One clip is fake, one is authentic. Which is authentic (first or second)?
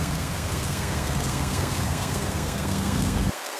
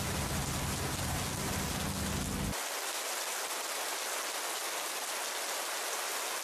second